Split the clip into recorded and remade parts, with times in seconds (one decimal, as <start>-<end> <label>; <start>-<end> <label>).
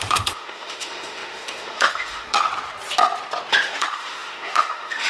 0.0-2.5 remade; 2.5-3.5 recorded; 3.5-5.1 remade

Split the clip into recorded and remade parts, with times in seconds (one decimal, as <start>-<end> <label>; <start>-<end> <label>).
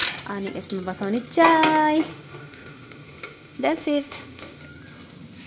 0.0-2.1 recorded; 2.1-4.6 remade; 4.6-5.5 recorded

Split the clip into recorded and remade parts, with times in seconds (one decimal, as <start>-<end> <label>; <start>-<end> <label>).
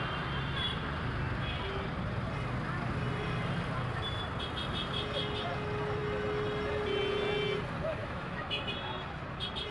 0.0-8.0 recorded; 8.0-8.6 remade; 8.6-9.7 recorded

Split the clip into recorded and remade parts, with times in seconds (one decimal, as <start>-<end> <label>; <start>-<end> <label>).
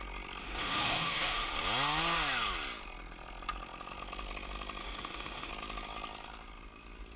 0.0-0.4 recorded; 0.4-1.5 remade; 1.5-4.8 recorded; 4.8-5.5 remade; 5.5-7.2 recorded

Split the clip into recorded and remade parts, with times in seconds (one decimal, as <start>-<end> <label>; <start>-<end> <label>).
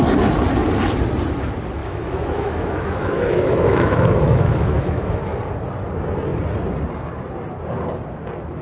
0.0-1.8 recorded; 1.8-5.2 remade; 5.2-8.6 recorded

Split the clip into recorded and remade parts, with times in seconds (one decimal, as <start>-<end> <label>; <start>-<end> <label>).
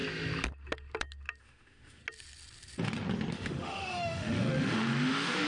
0.0-1.4 recorded; 1.4-2.0 remade; 2.0-3.3 recorded; 3.3-5.5 remade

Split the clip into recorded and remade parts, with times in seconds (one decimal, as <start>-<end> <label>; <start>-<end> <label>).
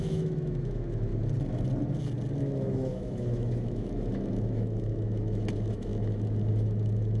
0.0-1.1 remade; 1.1-2.4 recorded; 2.4-7.2 remade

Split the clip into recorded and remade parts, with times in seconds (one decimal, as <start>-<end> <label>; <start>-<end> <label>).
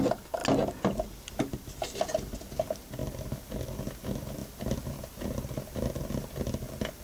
0.0-7.0 recorded